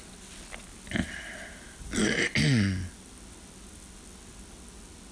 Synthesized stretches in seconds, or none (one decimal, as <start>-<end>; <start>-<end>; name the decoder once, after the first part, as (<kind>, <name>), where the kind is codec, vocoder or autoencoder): none